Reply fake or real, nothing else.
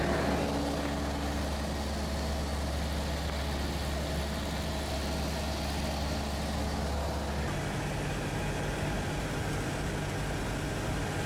real